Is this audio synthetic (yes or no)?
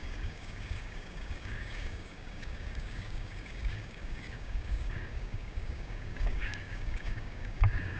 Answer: yes